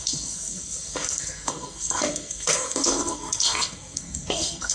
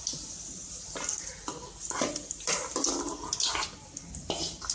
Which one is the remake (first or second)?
first